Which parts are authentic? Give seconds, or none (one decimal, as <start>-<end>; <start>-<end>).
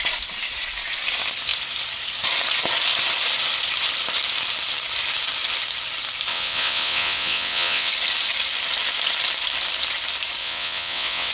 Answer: 0.0-6.3; 7.9-10.4